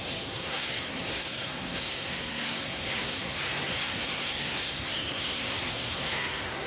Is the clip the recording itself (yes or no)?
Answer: no